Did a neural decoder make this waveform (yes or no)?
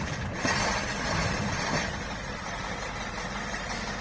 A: yes